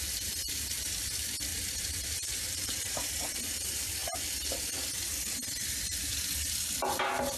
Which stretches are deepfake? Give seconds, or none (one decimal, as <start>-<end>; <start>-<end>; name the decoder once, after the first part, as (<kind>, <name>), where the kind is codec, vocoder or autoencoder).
1.5-3.1 (vocoder, BigVGAN v2)